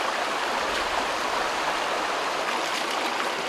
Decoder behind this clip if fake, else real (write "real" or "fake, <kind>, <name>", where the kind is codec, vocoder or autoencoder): real